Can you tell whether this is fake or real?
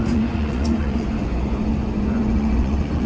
fake